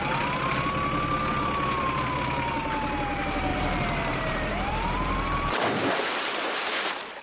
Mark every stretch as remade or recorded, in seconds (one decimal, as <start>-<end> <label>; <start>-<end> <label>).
0.0-3.5 recorded; 3.5-6.1 remade; 6.1-7.2 recorded